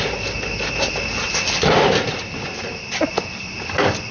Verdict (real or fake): real